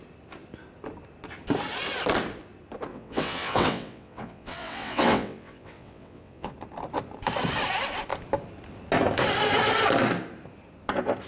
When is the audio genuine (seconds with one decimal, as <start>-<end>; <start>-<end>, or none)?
0.0-2.9; 6.5-11.3